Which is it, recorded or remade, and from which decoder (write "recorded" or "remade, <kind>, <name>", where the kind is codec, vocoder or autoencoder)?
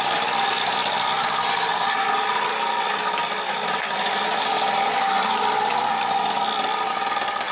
recorded